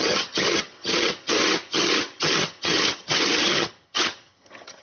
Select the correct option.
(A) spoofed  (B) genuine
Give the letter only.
A